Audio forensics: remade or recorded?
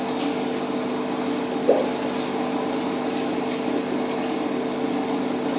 recorded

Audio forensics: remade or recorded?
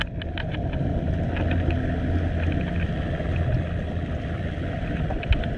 recorded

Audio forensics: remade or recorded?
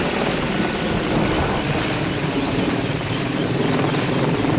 recorded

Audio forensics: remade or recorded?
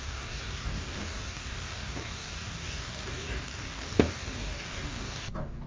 remade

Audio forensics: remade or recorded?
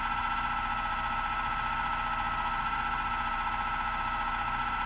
recorded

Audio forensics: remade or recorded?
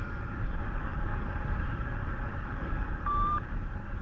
remade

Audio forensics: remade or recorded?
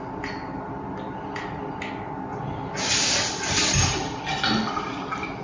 recorded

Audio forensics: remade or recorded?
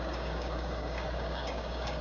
remade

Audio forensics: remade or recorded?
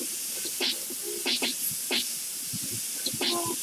recorded